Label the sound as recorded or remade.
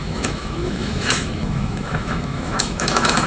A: remade